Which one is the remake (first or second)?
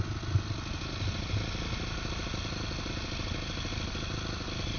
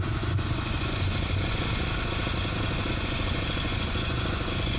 second